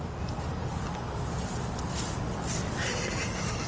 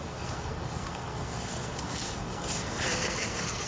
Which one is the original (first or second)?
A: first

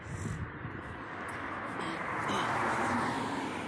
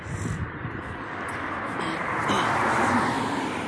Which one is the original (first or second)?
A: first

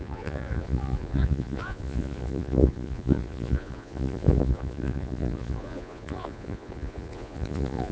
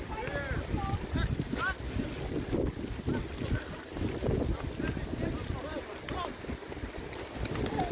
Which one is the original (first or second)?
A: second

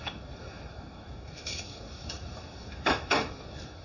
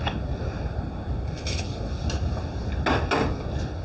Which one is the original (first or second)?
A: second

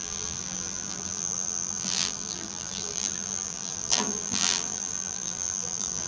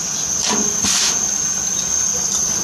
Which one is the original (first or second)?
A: second